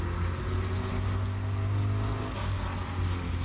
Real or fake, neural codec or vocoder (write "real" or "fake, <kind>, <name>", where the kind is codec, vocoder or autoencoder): real